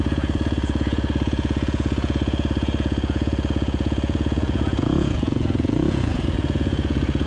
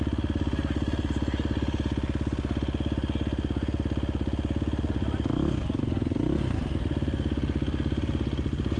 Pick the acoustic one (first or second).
second